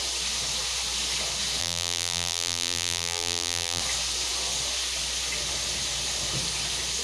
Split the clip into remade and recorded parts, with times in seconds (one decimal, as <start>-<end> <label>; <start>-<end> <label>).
0.0-1.6 recorded; 1.6-3.8 remade; 3.8-7.0 recorded